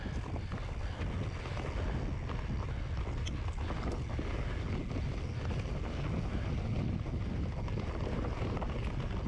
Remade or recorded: recorded